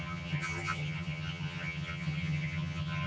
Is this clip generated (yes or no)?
yes